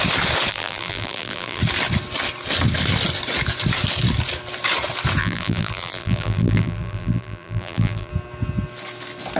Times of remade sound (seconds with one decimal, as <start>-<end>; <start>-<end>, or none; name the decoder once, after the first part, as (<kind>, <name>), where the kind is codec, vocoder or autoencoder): 0.5-1.6 (vocoder, BigVGAN v2); 5.2-8.1